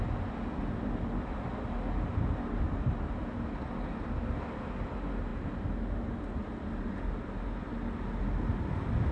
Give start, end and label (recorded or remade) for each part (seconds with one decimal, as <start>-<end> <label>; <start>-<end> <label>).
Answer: 0.0-9.1 recorded